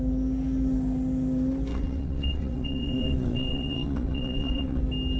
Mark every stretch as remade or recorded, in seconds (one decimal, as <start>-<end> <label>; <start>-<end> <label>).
0.0-1.7 recorded; 1.7-4.8 remade; 4.8-5.2 recorded